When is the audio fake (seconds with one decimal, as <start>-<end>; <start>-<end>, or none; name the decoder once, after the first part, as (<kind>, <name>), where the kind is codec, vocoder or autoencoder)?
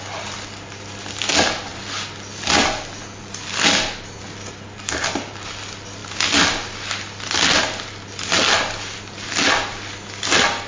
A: none